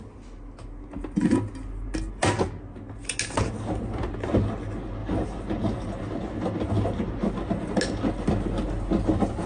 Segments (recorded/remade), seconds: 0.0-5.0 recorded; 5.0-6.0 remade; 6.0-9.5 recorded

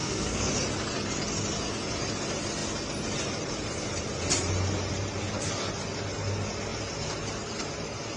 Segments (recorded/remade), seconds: 0.0-0.5 remade; 0.5-8.2 recorded

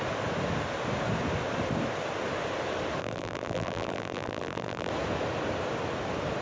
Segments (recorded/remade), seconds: 0.0-3.0 recorded; 3.0-4.9 remade; 4.9-6.4 recorded

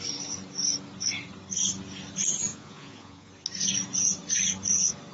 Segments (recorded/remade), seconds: 0.0-2.5 recorded; 2.5-3.3 remade; 3.3-5.1 recorded

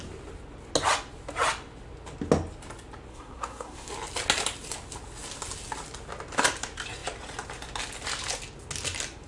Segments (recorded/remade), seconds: 0.0-3.1 recorded; 3.1-3.9 remade; 3.9-9.3 recorded